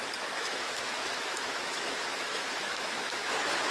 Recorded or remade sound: remade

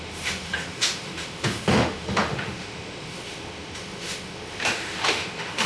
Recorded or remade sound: remade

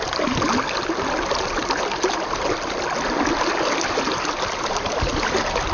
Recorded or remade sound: recorded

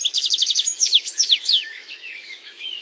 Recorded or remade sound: remade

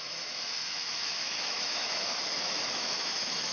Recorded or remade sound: remade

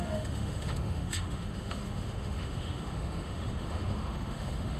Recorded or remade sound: remade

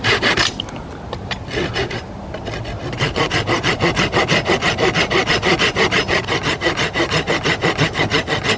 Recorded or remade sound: recorded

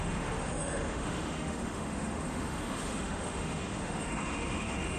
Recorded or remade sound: remade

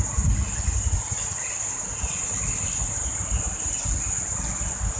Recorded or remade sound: recorded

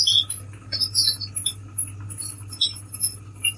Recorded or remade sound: recorded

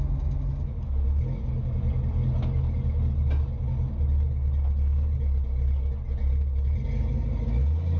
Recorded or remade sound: recorded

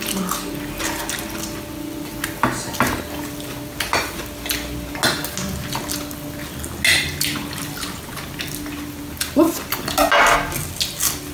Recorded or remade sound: recorded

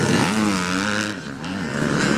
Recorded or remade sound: recorded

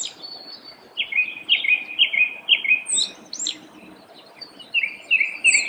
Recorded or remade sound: recorded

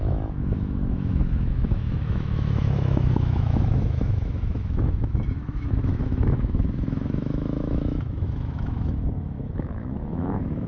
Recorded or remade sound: remade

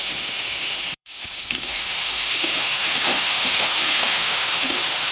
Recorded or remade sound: remade